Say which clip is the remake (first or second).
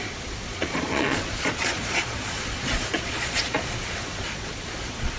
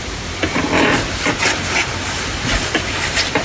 first